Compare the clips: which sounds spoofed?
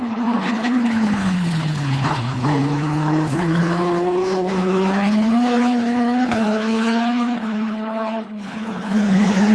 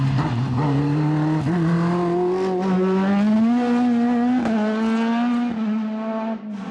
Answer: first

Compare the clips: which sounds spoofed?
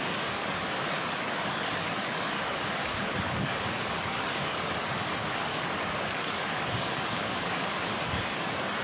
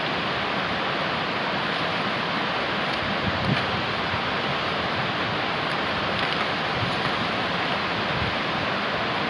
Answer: first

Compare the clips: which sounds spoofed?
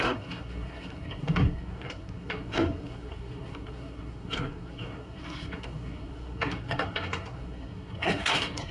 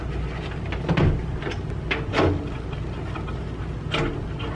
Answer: first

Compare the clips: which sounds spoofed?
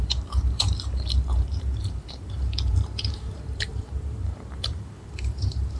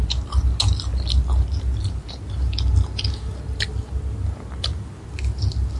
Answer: first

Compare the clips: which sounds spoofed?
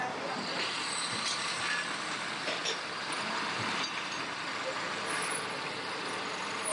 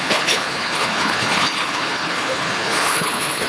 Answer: second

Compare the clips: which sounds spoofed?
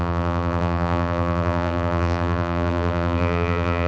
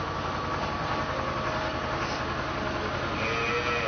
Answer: first